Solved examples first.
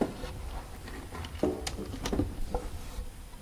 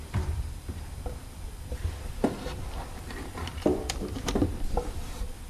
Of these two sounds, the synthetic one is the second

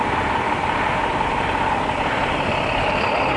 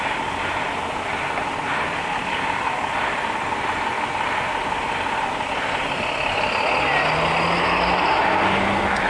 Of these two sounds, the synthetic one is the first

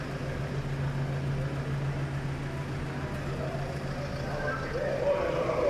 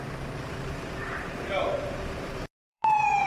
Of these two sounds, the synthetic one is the second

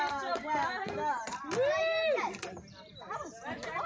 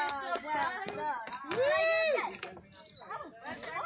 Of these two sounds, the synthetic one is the first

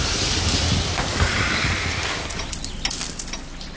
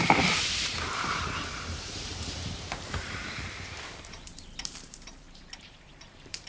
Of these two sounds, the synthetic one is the second